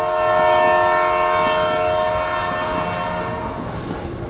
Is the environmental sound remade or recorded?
recorded